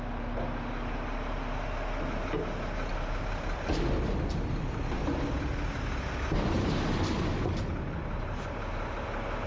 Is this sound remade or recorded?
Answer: recorded